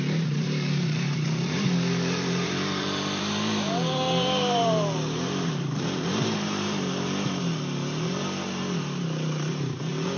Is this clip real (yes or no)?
no